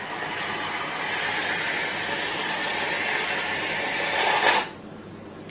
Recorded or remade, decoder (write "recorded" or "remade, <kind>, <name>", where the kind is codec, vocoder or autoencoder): recorded